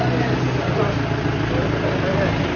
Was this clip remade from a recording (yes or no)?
no